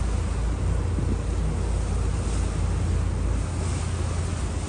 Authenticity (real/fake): real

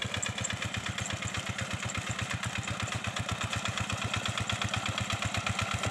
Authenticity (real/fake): real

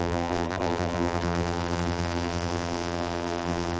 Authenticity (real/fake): fake